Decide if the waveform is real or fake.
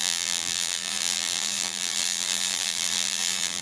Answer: fake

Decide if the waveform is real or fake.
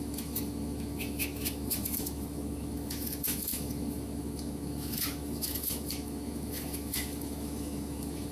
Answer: fake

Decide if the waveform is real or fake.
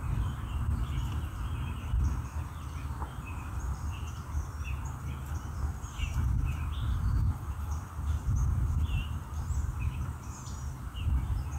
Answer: real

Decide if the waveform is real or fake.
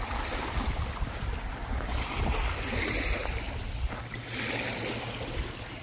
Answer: real